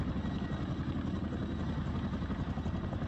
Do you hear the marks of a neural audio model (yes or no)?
no